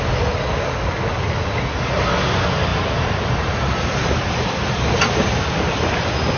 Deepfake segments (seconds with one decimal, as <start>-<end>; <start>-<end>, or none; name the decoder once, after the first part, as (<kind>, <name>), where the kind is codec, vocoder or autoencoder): 2.7-5.3 (vocoder, BigVGAN v2)